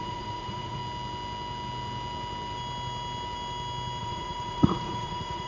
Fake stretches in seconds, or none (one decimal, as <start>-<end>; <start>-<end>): 0.0-0.8; 4.0-5.5